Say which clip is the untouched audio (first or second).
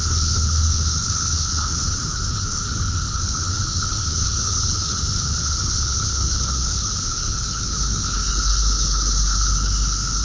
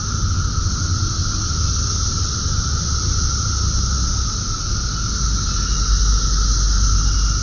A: second